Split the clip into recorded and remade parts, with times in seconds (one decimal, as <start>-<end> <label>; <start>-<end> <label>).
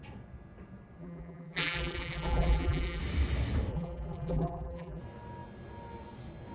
0.0-1.0 recorded; 1.0-3.0 remade; 3.0-3.7 recorded; 3.7-5.0 remade; 5.0-6.5 recorded